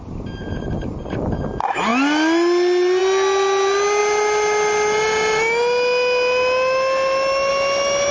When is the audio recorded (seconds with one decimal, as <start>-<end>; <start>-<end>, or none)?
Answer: 0.0-8.1